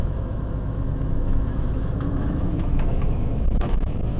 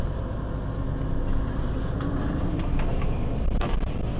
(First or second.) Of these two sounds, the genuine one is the second